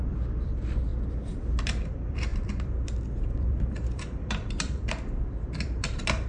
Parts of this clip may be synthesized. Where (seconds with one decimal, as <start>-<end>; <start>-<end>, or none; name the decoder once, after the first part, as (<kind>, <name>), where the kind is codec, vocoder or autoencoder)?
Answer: 0.0-0.9 (vocoder, BigVGAN v2); 1.6-6.3